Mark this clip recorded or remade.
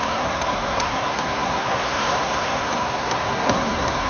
remade